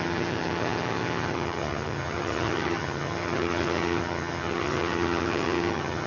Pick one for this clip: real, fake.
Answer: fake